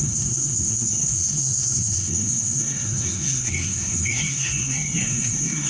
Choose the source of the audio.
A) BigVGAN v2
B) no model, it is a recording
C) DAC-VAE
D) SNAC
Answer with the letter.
D